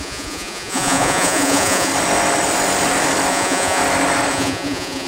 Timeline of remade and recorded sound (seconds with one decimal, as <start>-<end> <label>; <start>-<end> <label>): 0.0-1.9 remade; 1.9-3.3 recorded; 3.3-3.8 remade; 3.8-4.3 recorded; 4.3-5.1 remade